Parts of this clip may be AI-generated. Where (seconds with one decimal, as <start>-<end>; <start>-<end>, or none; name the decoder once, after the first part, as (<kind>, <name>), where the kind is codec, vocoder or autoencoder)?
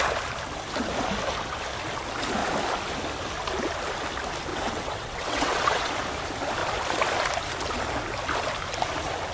4.5-5.9 (vocoder, WaveNeXt)